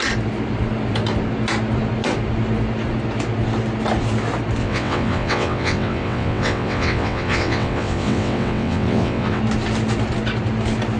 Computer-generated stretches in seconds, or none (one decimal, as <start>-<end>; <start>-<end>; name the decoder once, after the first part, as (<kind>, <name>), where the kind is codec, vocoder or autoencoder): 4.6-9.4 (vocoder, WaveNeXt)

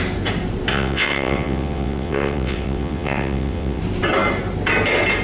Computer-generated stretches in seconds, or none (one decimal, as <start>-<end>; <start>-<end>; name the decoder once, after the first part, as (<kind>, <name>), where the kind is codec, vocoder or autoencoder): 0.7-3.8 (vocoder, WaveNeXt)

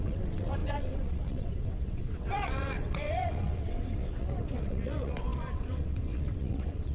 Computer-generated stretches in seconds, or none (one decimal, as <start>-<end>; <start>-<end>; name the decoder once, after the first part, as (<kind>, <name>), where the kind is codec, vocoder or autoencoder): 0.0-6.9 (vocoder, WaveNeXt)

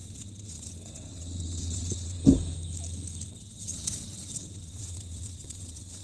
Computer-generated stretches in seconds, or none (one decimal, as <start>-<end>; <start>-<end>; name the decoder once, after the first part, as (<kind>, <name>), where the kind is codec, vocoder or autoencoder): 0.0-2.2 (vocoder, WaveNeXt); 3.3-6.0

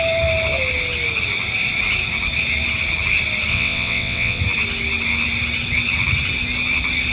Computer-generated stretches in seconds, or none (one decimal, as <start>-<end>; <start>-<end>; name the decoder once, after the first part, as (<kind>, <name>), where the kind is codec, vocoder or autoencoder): 3.5-4.4 (vocoder, WaveNeXt)

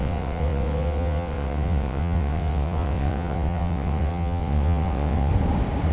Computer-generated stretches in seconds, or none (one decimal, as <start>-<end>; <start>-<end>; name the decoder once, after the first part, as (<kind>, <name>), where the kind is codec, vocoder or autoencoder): 0.0-5.3 (vocoder, WaveNeXt)

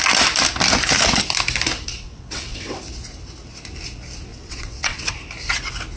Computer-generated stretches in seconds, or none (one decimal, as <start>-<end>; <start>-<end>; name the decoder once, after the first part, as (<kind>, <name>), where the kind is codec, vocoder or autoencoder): 1.9-2.8 (vocoder, WaveNeXt); 4.3-5.1